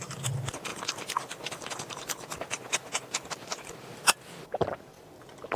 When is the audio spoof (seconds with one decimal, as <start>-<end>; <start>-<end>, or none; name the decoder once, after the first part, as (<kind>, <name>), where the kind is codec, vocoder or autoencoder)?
none